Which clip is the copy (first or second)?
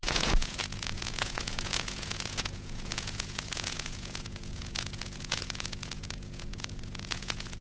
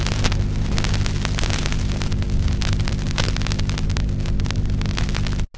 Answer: first